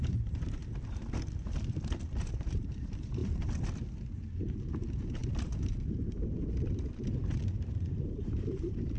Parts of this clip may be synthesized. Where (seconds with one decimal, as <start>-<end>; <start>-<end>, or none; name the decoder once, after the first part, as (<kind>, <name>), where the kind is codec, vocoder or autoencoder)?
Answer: 0.0-0.6 (vocoder, BigVGAN v2); 2.2-3.2; 4.4-9.0

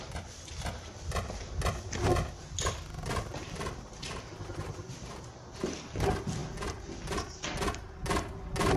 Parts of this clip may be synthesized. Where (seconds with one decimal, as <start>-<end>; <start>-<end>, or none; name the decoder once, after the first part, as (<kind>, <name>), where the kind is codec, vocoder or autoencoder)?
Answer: none

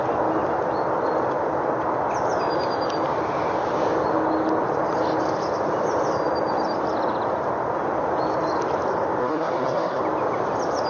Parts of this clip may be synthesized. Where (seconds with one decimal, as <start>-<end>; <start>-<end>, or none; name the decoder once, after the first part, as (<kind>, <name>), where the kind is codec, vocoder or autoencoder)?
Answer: 9.2-10.0 (codec, SNAC)